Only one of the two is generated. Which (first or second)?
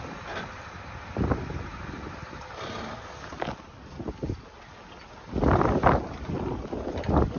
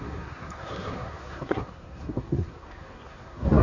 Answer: second